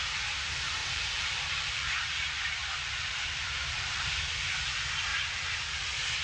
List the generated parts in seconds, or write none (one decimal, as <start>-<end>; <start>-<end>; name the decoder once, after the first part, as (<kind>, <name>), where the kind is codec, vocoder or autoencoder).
0.8-4.5 (vocoder, BigVGAN v2)